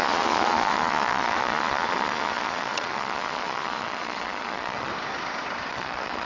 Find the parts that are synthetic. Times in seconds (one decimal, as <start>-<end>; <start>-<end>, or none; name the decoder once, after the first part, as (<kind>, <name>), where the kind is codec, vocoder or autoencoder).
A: 0.0-4.9 (vocoder, Vocos); 5.7-6.3